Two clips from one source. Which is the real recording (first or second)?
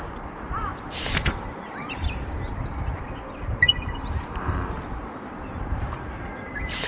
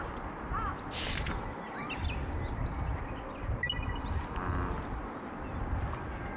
second